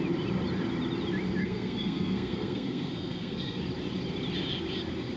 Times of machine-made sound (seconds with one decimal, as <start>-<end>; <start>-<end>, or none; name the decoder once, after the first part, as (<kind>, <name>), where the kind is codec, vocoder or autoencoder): 1.4-3.6 (codec, SNAC)